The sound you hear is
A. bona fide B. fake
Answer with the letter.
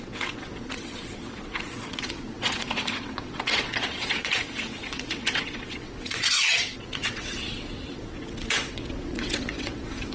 B